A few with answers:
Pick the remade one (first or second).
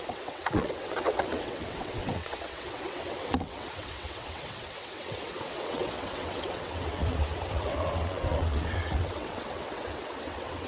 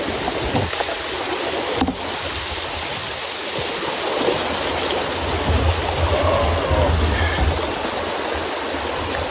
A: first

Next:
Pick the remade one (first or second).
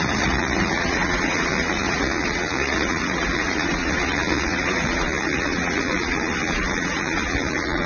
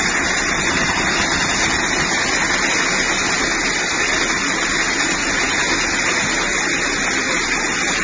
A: first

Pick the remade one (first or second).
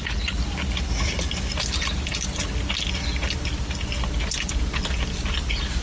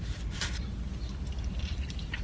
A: second